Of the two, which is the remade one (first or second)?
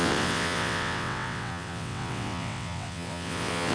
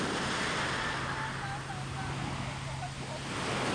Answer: first